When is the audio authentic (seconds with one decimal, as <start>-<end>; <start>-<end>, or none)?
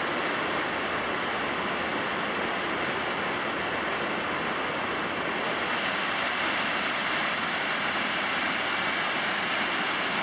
0.0-10.2